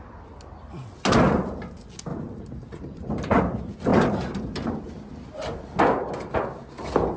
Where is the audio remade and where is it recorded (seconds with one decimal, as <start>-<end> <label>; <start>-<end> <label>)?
0.0-2.1 recorded; 2.1-3.4 remade; 3.4-3.9 recorded; 3.9-4.4 remade; 4.4-7.2 recorded